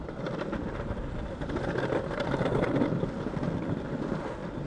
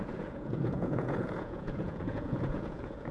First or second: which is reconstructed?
second